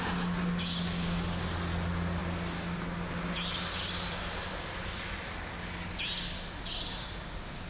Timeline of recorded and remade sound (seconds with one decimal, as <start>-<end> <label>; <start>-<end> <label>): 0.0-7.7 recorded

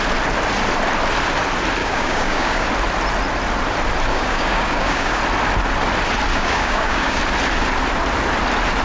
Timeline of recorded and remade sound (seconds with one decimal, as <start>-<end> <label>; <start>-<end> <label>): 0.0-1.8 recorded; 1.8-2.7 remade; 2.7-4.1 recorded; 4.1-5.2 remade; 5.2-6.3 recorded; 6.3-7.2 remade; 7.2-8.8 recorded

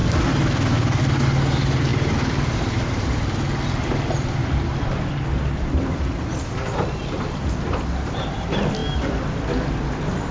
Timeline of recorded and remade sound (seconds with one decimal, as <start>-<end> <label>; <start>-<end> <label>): 0.0-10.3 recorded

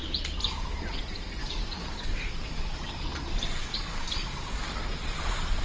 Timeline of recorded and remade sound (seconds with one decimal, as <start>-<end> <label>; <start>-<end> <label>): 0.0-1.4 recorded; 1.4-2.9 remade; 2.9-3.6 recorded; 3.6-4.7 remade; 4.7-5.6 recorded

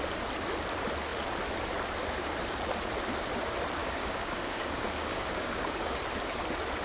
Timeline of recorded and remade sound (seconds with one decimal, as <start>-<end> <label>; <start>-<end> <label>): 0.0-3.8 recorded; 3.8-6.0 remade; 6.0-6.8 recorded

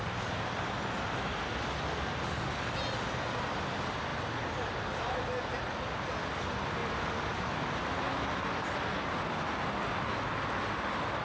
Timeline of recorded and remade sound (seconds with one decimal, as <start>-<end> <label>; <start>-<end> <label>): 0.0-11.2 recorded

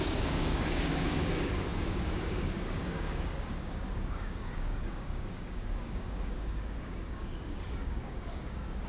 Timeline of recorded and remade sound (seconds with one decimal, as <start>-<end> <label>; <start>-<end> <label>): 0.0-8.9 remade